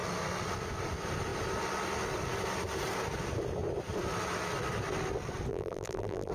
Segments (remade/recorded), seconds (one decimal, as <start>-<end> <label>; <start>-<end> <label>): 0.0-5.5 recorded; 5.5-6.3 remade